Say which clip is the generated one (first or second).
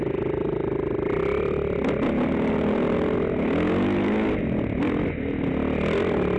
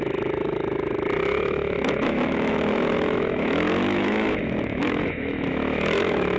second